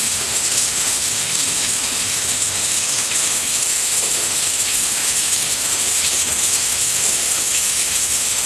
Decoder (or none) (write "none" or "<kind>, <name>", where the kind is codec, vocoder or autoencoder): autoencoder, DAC-VAE